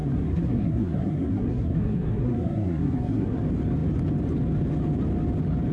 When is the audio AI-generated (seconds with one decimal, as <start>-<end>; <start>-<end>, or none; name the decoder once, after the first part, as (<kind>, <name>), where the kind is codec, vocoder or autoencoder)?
0.0-3.4 (codec, SNAC)

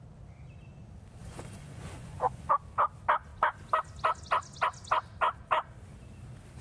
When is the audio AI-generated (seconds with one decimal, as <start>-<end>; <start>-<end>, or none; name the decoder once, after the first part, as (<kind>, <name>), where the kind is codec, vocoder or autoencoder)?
1.2-2.5 (vocoder, Vocos)

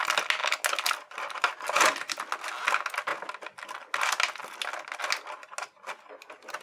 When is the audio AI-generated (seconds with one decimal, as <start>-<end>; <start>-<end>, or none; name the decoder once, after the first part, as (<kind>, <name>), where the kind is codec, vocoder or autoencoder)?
none

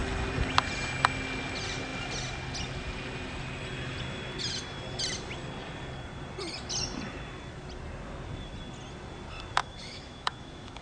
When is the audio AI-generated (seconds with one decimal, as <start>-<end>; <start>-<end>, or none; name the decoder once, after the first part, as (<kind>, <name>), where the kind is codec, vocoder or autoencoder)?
9.6-10.8 (autoencoder, DAC-VAE)

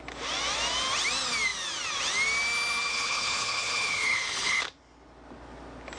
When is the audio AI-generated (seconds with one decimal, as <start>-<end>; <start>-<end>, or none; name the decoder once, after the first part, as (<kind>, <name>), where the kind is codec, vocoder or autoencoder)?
2.9-4.6 (codec, HILCodec)